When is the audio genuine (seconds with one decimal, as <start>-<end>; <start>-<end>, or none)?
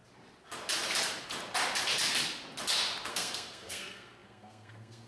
0.0-3.1